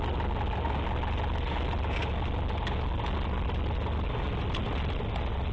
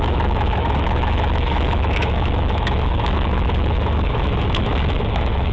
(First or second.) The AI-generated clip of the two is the second